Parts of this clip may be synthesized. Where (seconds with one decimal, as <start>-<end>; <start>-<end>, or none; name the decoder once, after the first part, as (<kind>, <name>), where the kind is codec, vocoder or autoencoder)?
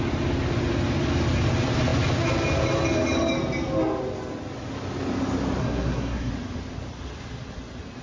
5.6-6.3 (codec, SNAC)